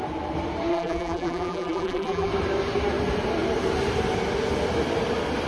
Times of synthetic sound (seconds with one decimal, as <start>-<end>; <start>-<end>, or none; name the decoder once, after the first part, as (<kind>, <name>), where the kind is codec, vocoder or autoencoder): 0.7-2.3 (vocoder, BigVGAN v2)